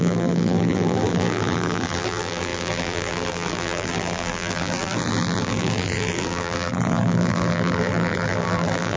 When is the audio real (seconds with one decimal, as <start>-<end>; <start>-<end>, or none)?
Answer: none